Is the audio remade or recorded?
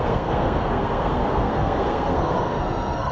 remade